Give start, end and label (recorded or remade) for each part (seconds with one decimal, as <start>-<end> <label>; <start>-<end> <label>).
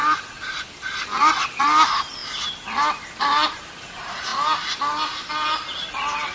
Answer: 0.0-1.3 remade; 1.3-2.2 recorded; 2.2-3.0 remade; 3.0-6.3 recorded